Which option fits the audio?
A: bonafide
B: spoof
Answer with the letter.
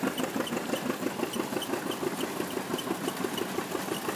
A